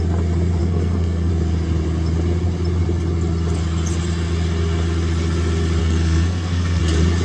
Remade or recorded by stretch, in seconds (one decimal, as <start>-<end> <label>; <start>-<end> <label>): 0.0-0.6 recorded; 0.6-1.3 remade; 1.3-5.8 recorded; 5.8-6.8 remade; 6.8-7.2 recorded